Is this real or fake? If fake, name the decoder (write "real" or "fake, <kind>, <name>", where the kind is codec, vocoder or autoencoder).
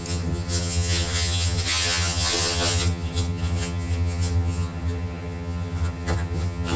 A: fake, vocoder, HiFi-GAN